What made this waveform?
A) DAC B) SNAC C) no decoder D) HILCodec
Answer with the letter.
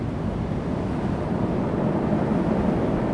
C